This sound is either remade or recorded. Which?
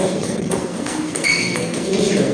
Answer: remade